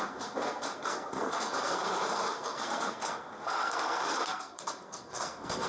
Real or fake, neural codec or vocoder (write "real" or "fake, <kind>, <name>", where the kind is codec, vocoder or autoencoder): fake, codec, SNAC